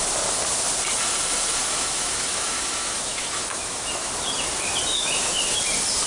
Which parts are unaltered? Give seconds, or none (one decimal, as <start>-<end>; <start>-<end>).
0.0-1.6; 4.1-4.9; 5.6-6.1